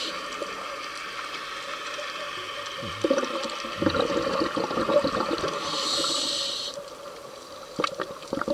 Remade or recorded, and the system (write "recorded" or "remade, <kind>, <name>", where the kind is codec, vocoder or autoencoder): recorded